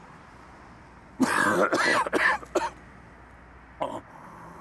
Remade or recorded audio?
recorded